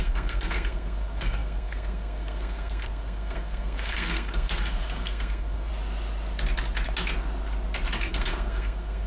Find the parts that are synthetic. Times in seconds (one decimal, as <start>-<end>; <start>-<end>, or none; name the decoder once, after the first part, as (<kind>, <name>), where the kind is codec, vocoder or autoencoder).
0.0-5.7 (codec, SNAC); 8.1-9.1